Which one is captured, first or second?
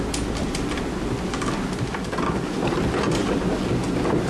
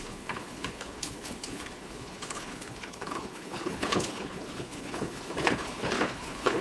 first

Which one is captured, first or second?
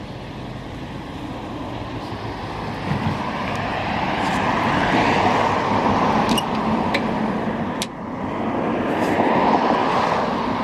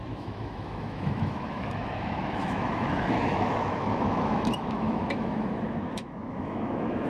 first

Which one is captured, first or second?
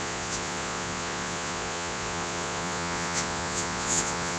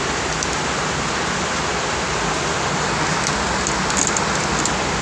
second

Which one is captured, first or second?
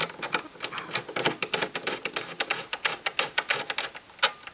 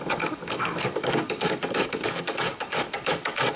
first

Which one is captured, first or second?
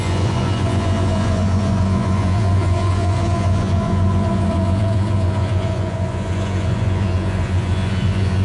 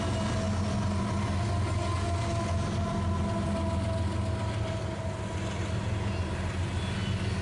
second